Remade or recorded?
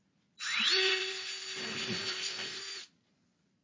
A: recorded